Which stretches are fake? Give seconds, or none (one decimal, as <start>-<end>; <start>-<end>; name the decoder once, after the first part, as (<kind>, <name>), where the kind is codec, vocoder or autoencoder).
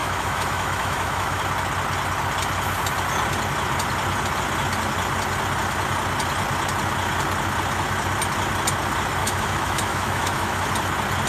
0.0-1.4 (autoencoder, DAC-VAE); 9.2-10.7